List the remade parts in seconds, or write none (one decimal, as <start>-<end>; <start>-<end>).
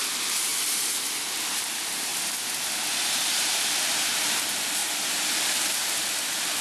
0.0-0.5; 1.2-2.1; 3.1-4.8; 5.9-6.6